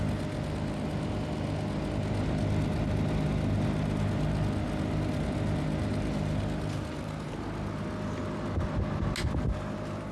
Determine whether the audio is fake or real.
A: real